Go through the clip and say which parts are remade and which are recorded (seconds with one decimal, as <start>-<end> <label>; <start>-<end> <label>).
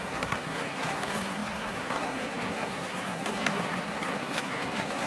0.0-5.1 remade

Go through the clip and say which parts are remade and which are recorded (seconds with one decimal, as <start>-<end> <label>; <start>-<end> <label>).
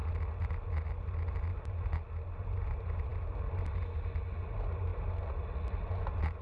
0.0-6.4 recorded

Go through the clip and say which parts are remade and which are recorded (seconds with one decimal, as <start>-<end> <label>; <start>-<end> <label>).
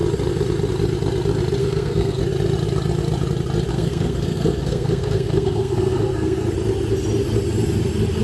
0.0-1.6 recorded; 1.6-2.2 remade; 2.2-3.7 recorded; 3.7-6.5 remade; 6.5-8.2 recorded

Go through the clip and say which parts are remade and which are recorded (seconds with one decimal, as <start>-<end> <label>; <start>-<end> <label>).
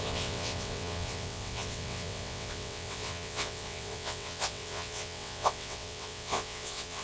0.0-7.0 remade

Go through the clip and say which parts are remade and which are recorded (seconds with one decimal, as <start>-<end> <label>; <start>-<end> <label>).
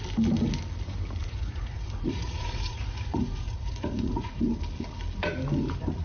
0.0-1.2 recorded; 1.2-4.4 remade; 4.4-6.0 recorded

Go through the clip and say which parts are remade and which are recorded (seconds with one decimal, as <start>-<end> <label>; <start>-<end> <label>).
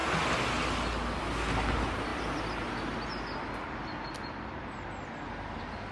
0.0-5.9 recorded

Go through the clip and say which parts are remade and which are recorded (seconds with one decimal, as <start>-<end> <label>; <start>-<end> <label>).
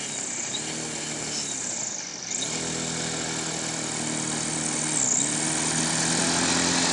0.0-6.9 recorded